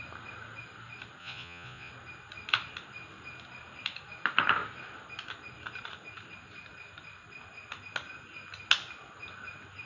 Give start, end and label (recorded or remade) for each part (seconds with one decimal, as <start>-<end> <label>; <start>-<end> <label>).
0.0-1.2 recorded; 1.2-1.9 remade; 1.9-9.9 recorded